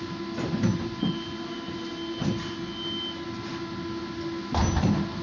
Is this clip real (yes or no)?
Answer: yes